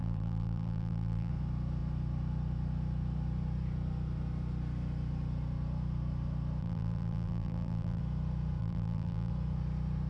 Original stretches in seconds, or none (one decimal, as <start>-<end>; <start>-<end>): 1.3-6.6; 8.0-8.6; 9.3-10.1